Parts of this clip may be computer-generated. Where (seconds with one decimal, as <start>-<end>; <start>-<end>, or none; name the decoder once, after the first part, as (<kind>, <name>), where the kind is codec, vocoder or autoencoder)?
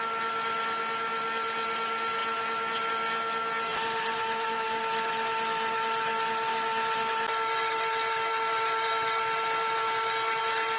3.7-4.8 (vocoder, BigVGAN v2)